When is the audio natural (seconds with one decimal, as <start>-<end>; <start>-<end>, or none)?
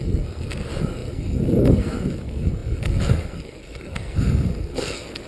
none